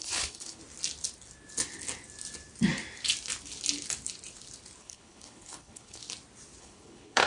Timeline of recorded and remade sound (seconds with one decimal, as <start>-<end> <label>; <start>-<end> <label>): 0.0-0.6 remade; 0.6-4.8 recorded; 4.8-6.0 remade; 6.0-6.6 recorded; 6.6-7.3 remade